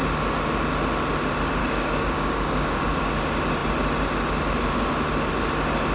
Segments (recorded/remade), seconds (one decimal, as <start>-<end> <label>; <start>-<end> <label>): 0.0-1.6 recorded; 1.6-3.1 remade; 3.1-5.9 recorded